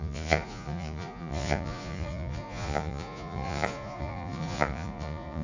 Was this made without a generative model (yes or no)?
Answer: no